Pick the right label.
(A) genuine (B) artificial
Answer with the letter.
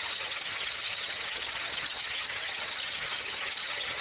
B